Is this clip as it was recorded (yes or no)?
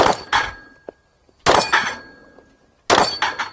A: yes